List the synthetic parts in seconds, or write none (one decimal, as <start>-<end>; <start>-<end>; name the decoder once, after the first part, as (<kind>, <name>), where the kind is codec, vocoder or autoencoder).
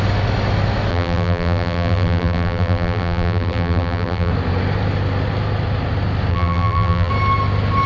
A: 0.9-4.3 (vocoder, BigVGAN v2); 6.3-7.1